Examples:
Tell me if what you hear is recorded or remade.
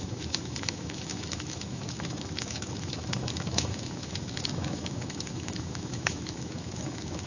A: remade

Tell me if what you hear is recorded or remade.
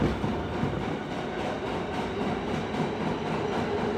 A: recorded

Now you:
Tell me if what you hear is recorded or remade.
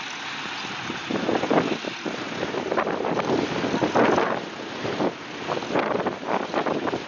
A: recorded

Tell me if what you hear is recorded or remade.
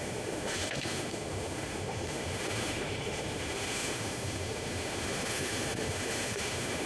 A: remade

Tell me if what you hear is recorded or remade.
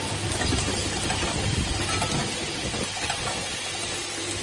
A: recorded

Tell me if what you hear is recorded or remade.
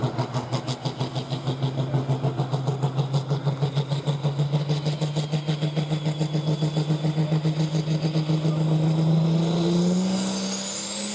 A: recorded